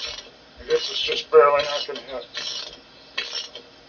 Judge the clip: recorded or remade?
recorded